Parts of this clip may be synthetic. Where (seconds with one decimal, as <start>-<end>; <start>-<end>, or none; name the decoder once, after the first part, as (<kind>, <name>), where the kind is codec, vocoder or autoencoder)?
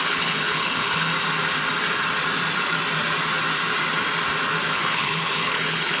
0.0-1.1 (codec, HILCodec); 4.7-6.0